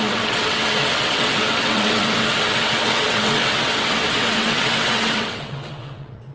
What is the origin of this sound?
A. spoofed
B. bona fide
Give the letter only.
A